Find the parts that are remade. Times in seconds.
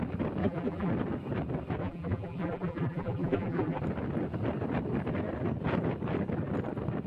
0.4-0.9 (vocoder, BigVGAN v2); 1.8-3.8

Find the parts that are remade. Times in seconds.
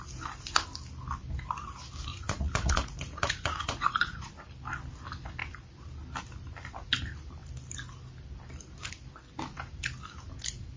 2.1-4.3 (vocoder, Vocos)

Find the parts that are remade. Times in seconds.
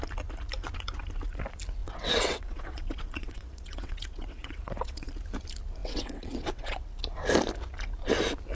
1.8-5.1 (vocoder, WaveNeXt); 5.8-6.9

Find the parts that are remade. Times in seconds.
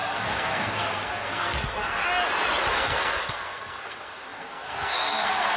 0.0-2.0 (codec, SNAC); 2.7-5.6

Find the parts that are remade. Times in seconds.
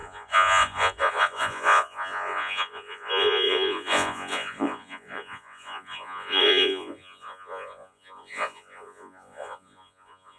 0.0-10.4 (vocoder, Vocos)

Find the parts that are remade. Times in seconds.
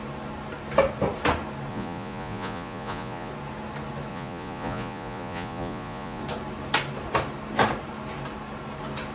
1.7-3.3 (vocoder, Vocos); 4.1-6.2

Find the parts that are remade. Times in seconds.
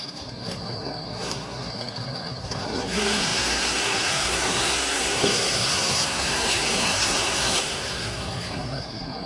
0.0-9.3 (codec, SNAC)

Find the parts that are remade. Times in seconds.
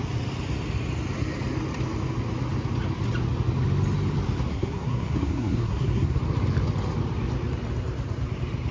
4.5-6.2 (codec, SNAC)